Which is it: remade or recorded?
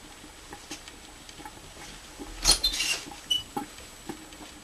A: recorded